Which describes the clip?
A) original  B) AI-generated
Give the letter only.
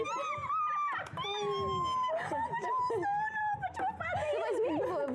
A